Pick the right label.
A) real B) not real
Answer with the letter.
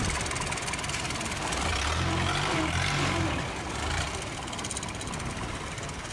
A